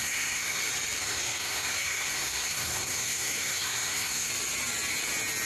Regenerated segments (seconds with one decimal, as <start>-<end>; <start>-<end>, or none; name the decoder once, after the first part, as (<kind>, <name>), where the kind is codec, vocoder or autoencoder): 0.0-0.6 (codec, SNAC); 1.0-4.3